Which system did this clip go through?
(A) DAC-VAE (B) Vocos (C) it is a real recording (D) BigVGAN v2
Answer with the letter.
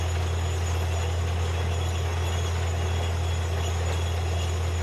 C